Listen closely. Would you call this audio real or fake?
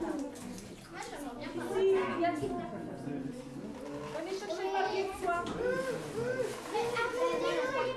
real